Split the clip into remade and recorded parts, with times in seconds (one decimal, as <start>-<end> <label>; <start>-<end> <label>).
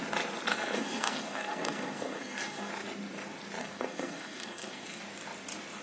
0.0-0.5 recorded; 0.5-2.7 remade; 2.7-3.6 recorded; 3.6-5.0 remade; 5.0-5.8 recorded